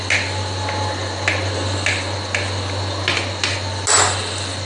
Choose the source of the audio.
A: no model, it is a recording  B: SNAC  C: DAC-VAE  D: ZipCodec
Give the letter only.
A